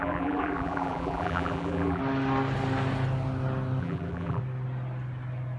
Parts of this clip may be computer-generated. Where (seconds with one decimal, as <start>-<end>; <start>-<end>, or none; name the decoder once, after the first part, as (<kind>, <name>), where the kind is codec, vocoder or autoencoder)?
0.0-2.0 (vocoder, BigVGAN v2); 3.8-4.4